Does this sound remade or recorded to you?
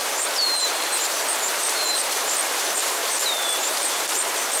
remade